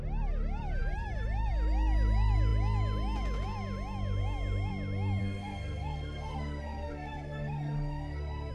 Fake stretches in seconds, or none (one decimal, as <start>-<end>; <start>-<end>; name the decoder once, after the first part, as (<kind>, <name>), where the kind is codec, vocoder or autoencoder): 5.2-8.5 (codec, SNAC)